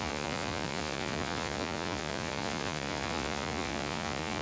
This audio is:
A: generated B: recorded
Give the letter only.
A